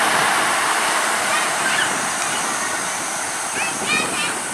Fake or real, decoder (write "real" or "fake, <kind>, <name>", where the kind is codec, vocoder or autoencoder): real